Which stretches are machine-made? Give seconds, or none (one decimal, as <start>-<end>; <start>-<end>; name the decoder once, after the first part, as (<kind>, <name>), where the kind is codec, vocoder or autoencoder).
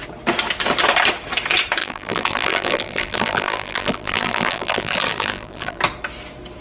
1.8-5.8 (vocoder, BigVGAN v2)